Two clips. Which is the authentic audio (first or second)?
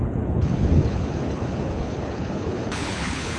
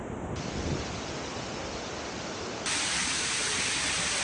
second